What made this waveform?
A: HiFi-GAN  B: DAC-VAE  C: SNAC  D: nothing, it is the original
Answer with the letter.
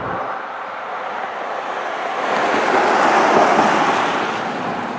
D